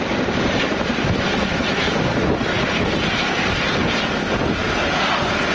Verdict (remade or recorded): recorded